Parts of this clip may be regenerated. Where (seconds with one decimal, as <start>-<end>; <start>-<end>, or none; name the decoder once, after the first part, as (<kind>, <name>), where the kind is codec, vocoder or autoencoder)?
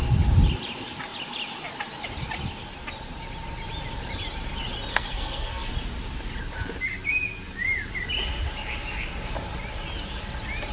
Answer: 4.9-5.7 (codec, SNAC)